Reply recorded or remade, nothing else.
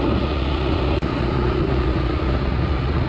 remade